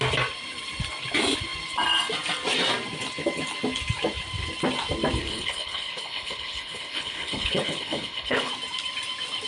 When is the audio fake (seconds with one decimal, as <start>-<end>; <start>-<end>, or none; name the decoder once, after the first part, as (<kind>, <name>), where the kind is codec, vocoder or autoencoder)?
5.2-8.5 (codec, HILCodec)